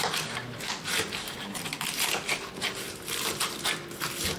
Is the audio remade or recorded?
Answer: remade